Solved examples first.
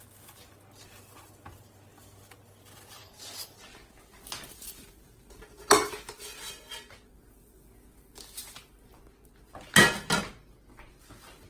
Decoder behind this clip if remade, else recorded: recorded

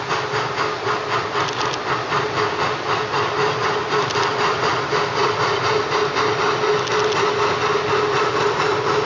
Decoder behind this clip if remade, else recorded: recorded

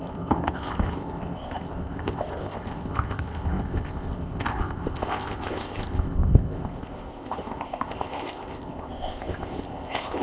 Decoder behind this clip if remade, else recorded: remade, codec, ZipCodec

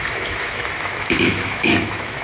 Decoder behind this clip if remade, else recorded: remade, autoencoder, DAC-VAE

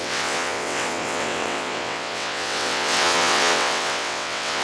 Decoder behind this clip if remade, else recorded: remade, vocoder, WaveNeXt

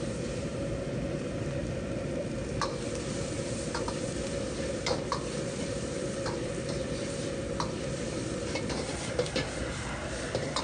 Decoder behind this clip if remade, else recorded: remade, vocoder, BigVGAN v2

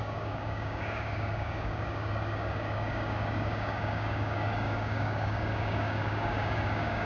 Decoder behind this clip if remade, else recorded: remade, codec, DAC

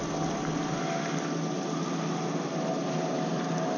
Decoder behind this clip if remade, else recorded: recorded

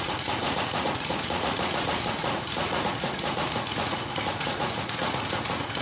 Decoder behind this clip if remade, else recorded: remade, vocoder, Vocos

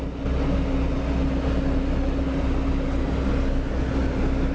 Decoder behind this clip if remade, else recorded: recorded